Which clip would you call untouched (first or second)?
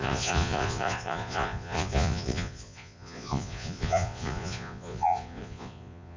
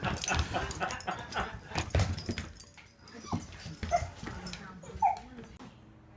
second